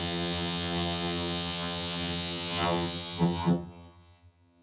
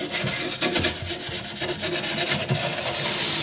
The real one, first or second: second